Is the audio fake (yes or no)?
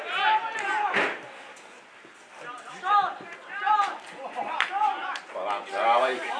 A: no